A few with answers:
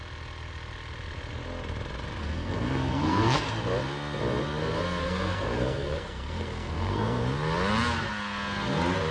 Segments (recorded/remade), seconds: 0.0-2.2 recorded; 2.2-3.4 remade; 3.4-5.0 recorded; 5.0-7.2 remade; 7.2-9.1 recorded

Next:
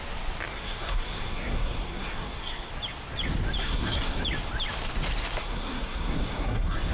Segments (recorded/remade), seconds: 0.0-0.5 recorded; 0.5-2.7 remade; 2.7-3.6 recorded; 3.6-4.2 remade; 4.2-5.4 recorded; 5.4-6.9 remade